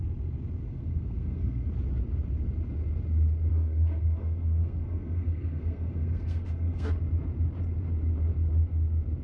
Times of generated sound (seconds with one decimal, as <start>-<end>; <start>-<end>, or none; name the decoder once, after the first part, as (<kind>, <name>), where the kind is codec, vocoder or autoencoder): 0.7-1.7 (codec, SNAC); 3.5-7.0